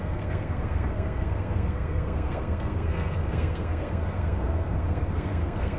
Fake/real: fake